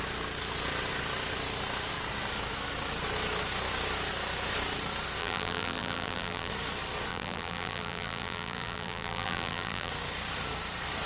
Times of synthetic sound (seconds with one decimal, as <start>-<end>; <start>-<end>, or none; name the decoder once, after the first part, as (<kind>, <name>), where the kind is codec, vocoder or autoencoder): 5.2-6.5 (vocoder, BigVGAN v2); 7.1-9.9